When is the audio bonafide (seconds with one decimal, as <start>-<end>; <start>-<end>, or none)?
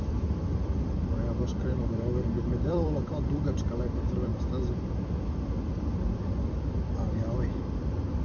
4.3-5.6